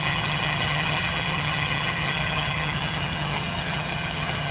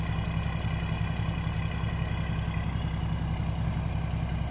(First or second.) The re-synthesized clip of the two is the first